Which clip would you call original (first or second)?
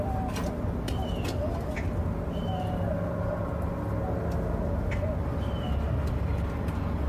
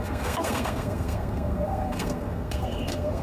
first